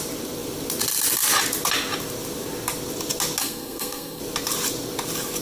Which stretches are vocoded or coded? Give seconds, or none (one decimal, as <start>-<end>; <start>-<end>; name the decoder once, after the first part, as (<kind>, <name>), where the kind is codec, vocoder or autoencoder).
3.4-4.2 (codec, SNAC)